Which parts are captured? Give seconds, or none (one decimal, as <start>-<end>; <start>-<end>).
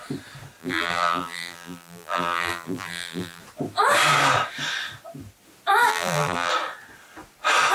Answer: 0.0-0.6; 3.4-5.9; 6.5-7.7